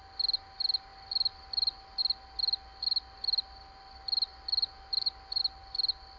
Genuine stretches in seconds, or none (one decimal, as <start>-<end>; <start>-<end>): 0.0-6.2